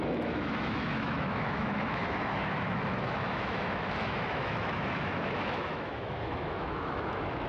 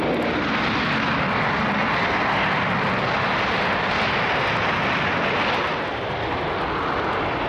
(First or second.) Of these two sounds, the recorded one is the second